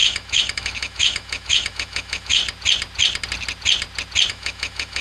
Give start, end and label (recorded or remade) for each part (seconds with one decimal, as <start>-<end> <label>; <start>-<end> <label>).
0.0-2.4 remade; 2.4-4.3 recorded; 4.3-5.0 remade